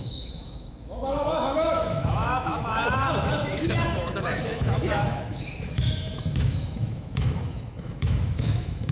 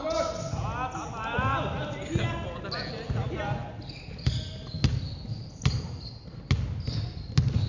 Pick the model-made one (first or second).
first